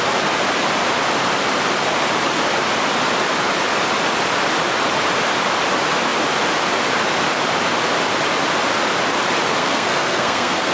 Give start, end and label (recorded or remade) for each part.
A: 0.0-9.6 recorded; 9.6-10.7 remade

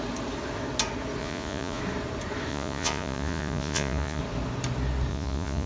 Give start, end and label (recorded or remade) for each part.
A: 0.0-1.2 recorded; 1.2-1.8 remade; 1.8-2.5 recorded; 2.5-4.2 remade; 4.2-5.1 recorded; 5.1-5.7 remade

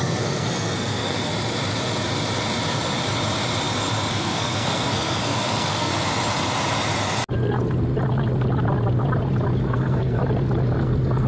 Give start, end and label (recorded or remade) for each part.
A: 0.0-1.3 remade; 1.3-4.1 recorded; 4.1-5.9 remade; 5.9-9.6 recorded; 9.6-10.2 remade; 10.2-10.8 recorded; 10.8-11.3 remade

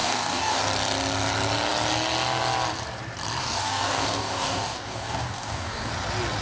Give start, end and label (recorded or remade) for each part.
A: 0.0-0.6 remade; 0.6-3.4 recorded; 3.4-5.9 remade; 5.9-6.4 recorded

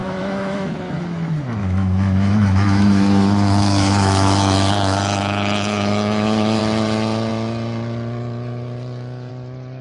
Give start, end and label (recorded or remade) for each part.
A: 0.0-0.7 remade; 0.7-1.6 recorded; 1.6-6.6 remade; 6.6-9.8 recorded